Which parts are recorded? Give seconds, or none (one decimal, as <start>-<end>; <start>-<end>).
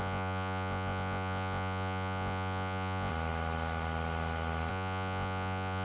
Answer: 3.1-4.7